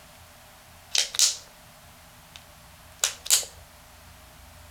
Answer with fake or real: real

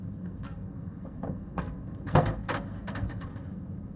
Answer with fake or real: fake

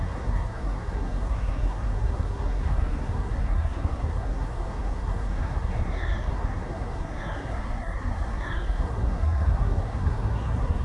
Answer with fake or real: fake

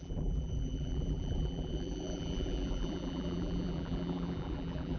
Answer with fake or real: fake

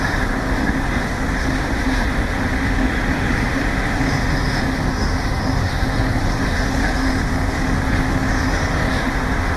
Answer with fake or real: fake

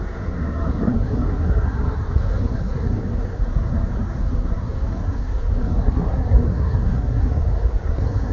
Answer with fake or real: fake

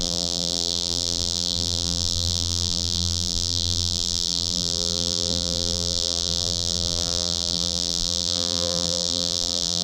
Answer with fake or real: fake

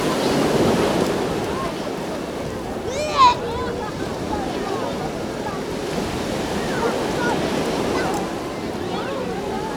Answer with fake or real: real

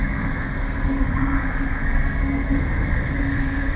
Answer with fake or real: fake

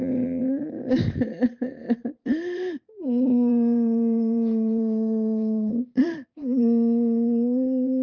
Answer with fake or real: fake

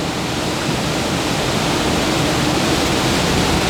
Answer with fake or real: real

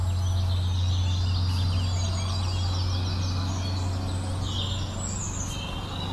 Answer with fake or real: real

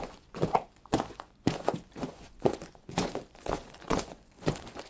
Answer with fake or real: fake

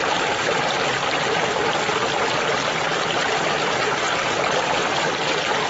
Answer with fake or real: real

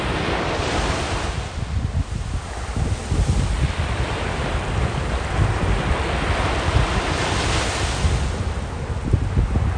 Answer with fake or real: real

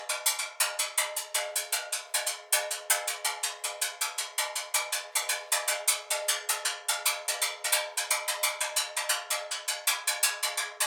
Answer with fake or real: real